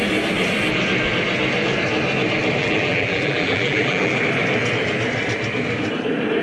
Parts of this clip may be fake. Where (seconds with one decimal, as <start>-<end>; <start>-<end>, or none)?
2.6-4.2